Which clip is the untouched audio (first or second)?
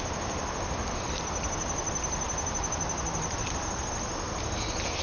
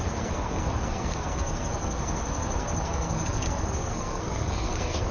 first